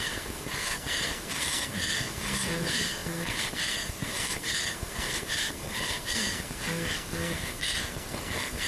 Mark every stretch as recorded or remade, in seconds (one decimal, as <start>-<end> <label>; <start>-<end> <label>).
0.0-8.7 remade